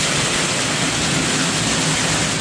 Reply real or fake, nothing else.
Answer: real